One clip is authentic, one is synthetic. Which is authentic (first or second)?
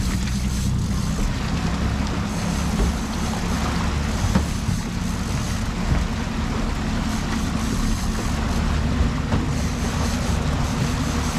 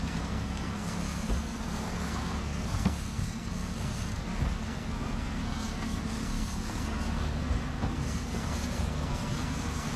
first